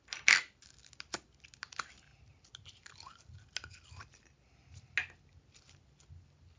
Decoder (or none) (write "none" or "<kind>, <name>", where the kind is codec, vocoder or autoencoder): none